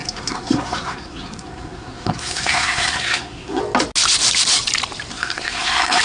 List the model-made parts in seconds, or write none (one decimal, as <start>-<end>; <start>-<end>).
0.0-3.6; 5.1-6.0